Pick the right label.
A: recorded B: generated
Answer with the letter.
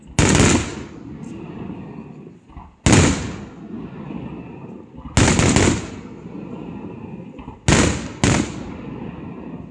A